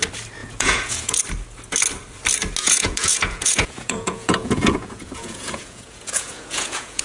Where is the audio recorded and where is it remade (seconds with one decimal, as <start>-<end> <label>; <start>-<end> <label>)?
0.0-0.4 recorded; 0.4-1.2 remade; 1.2-2.6 recorded; 2.6-7.0 remade